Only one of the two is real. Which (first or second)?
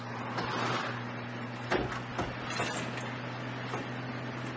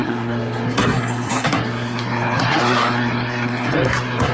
first